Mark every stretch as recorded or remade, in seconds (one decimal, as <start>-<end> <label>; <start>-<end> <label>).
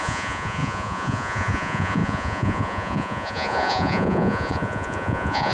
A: 0.0-5.5 remade